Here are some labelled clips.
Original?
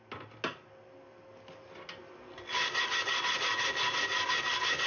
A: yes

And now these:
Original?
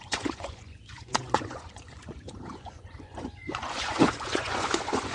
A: no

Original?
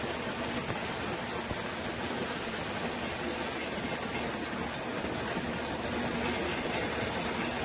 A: yes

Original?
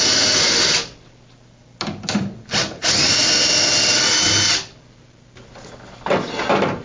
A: yes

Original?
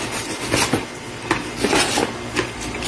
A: yes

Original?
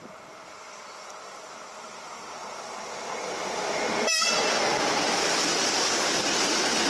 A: yes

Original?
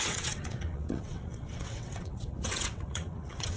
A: no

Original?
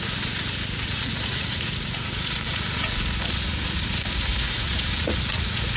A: no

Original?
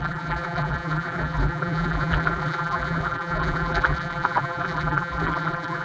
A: no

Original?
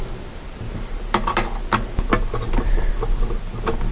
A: yes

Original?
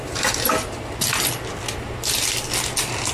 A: yes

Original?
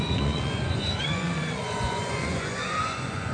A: no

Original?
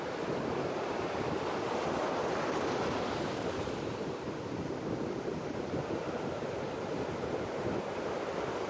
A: yes